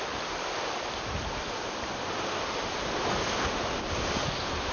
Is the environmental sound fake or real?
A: real